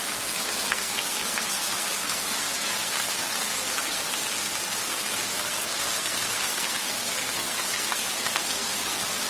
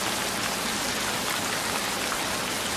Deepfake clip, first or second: first